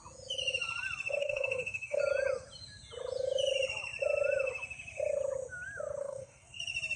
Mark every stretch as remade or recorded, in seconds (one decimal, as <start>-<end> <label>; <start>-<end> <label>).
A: 0.0-1.2 recorded; 1.2-2.0 remade; 2.0-6.0 recorded; 6.0-6.6 remade; 6.6-7.0 recorded